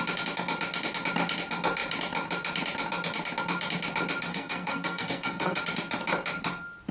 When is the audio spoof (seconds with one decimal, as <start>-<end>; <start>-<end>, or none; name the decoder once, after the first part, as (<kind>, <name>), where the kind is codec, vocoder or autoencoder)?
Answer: 4.3-5.6 (codec, SNAC)